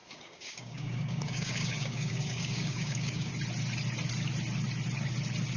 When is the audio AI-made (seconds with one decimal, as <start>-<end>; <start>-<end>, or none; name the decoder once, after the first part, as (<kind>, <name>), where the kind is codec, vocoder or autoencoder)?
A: 0.0-3.3 (codec, DAC)